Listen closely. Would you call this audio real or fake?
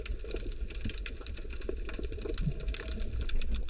real